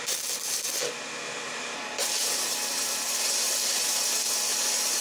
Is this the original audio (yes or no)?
no